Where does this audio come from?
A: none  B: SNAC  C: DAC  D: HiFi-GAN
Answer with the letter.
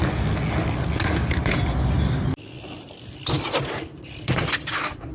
A